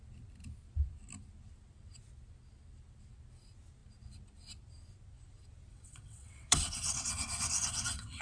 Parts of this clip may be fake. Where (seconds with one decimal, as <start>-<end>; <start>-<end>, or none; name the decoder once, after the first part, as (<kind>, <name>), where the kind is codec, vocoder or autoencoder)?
5.7-8.2 (vocoder, WaveNeXt)